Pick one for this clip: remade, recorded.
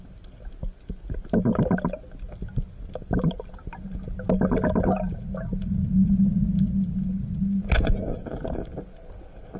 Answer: recorded